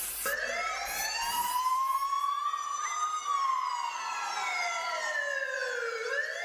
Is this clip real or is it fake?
fake